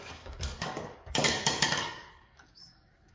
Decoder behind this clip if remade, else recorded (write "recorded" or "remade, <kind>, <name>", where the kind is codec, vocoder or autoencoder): remade, codec, DAC